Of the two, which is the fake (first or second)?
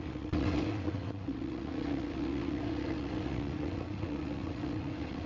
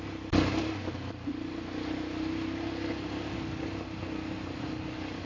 first